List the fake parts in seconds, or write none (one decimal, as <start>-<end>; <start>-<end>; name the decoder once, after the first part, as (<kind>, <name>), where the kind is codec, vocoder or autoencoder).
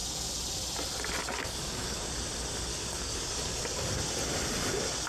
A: 1.2-2.0 (codec, DAC); 2.7-3.9